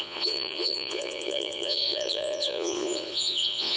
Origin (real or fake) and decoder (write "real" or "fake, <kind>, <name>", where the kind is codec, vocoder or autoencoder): fake, vocoder, Vocos